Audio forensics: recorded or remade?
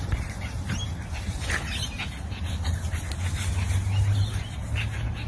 recorded